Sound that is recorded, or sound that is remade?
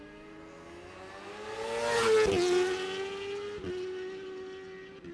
recorded